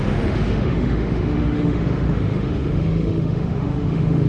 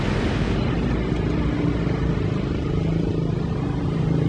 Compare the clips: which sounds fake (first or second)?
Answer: first